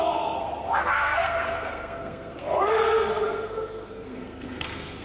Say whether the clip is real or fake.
fake